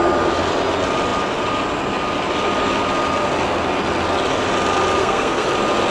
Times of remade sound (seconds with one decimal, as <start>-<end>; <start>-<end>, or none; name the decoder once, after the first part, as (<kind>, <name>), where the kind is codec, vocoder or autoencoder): 5.0-5.5 (codec, SNAC)